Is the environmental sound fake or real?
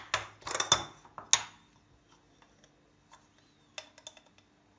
real